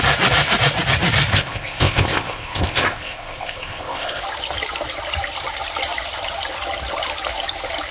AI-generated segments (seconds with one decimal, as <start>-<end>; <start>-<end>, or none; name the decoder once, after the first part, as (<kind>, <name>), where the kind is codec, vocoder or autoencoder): 1.3-4.2 (codec, ZipCodec)